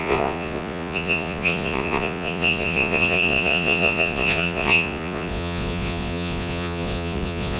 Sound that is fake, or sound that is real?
fake